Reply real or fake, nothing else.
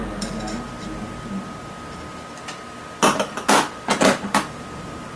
real